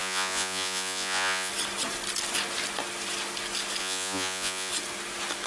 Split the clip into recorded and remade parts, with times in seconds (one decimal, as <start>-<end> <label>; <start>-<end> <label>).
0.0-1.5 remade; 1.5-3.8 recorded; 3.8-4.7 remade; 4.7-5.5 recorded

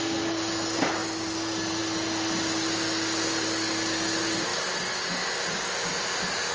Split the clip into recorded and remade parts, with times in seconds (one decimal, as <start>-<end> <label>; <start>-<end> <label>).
0.0-6.5 recorded

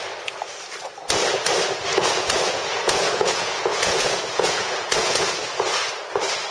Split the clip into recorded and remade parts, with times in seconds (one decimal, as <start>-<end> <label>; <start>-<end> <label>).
0.0-1.9 recorded; 1.9-5.8 remade; 5.8-6.5 recorded

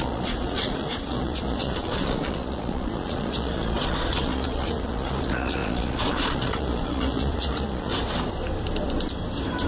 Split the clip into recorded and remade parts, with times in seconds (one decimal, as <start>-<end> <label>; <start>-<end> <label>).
0.0-7.9 remade; 7.9-9.7 recorded

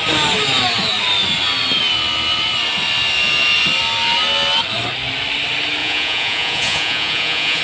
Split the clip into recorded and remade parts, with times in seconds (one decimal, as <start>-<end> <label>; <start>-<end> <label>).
0.0-5.8 recorded; 5.8-7.6 remade

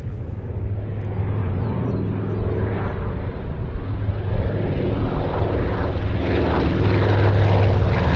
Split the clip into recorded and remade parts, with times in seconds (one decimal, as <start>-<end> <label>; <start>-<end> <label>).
0.0-1.4 recorded; 1.4-1.9 remade; 1.9-8.2 recorded